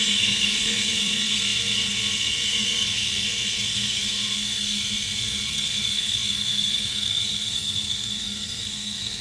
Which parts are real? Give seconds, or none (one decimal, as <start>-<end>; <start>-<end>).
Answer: none